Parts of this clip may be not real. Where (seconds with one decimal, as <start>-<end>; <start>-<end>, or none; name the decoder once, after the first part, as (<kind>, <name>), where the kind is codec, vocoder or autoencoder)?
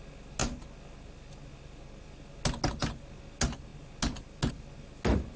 none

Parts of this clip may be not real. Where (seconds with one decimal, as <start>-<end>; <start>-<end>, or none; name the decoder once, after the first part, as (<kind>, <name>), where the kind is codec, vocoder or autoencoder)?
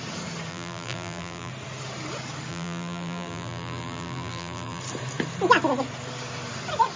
0.5-1.5 (vocoder, BigVGAN v2); 2.5-4.8